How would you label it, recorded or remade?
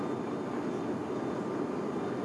recorded